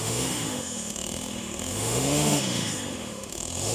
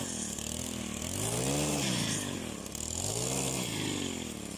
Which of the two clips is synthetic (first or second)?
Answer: first